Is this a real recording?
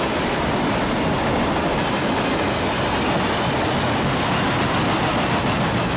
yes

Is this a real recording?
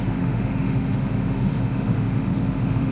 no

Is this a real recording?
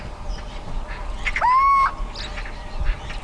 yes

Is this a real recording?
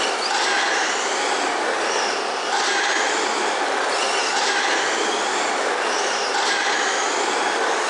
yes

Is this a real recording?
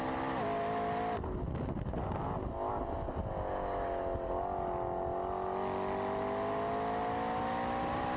yes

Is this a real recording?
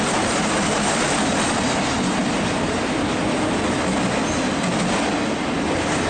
yes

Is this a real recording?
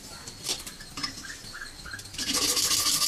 yes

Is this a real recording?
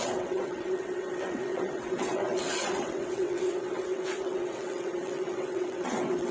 no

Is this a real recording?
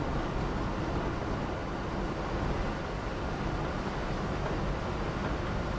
yes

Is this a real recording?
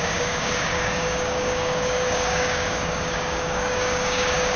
no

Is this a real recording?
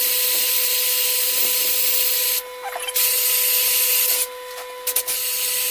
yes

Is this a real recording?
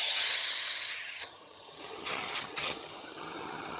no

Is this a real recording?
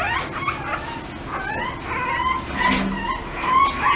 yes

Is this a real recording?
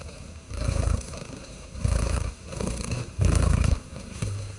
no